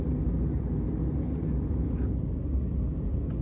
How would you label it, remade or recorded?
recorded